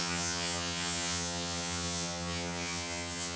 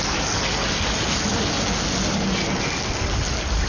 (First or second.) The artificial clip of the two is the first